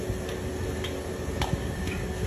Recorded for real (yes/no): yes